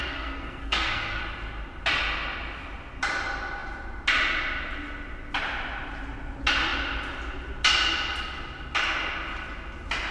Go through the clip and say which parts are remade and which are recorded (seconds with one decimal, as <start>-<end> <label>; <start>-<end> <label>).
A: 0.0-1.2 remade; 1.2-10.1 recorded